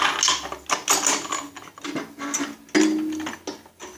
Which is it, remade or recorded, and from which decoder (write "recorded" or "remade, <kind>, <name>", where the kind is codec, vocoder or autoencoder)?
recorded